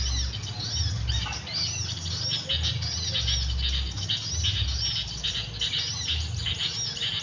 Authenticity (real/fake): real